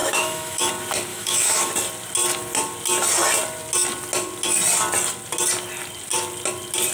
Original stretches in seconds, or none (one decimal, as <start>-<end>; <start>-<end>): 0.7-1.1; 1.7-6.9